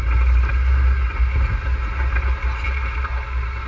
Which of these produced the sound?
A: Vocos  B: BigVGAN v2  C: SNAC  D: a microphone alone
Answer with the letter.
D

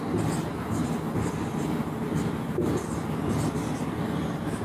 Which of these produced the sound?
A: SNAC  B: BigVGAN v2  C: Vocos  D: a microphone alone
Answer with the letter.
D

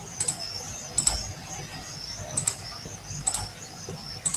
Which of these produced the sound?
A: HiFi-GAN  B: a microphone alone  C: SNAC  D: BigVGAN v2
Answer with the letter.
B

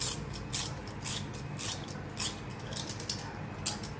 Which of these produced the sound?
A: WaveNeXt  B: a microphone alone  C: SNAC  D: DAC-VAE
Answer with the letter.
B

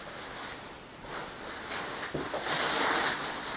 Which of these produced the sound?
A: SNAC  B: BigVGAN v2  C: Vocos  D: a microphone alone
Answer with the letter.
D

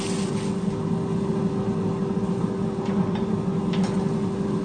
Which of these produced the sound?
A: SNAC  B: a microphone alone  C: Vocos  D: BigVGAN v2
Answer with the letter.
B